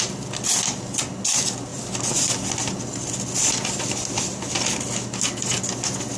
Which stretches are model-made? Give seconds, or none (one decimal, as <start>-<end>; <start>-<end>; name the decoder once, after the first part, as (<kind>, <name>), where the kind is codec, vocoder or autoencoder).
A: none